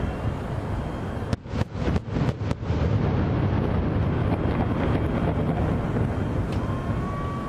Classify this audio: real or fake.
real